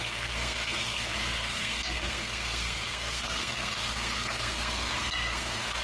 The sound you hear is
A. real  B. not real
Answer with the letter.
B